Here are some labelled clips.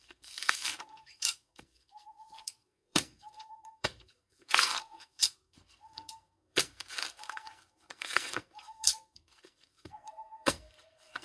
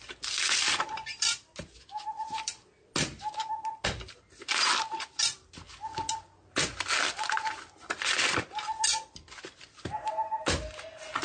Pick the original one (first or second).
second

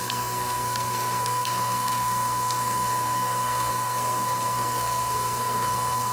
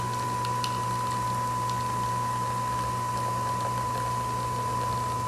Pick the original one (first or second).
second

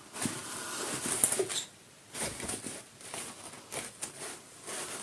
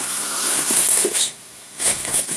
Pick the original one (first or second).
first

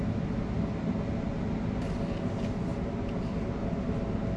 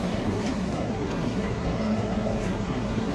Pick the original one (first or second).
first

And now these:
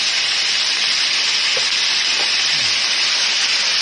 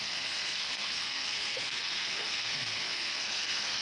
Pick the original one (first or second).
first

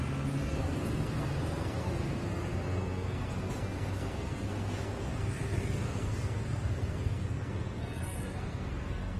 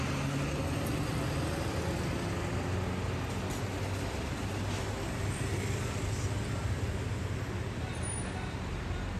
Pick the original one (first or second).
second